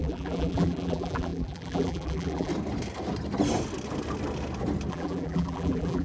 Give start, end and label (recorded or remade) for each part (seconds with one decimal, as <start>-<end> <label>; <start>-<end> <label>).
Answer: 0.0-2.5 remade; 2.5-4.9 recorded; 4.9-6.0 remade